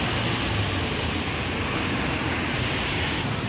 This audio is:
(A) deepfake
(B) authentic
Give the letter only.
B